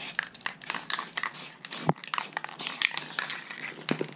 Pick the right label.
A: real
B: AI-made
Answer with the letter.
A